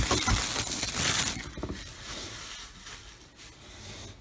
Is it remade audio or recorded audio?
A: recorded